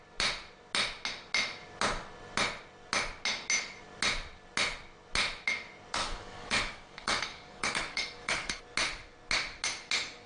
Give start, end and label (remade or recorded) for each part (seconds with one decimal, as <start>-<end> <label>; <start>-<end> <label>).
0.0-6.0 recorded; 6.0-8.6 remade; 8.6-10.3 recorded